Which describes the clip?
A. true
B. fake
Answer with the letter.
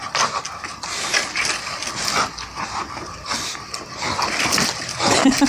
A